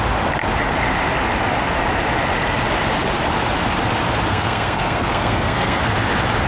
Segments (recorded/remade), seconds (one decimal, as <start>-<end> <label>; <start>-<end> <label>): 0.0-4.3 recorded; 4.3-5.8 remade; 5.8-6.5 recorded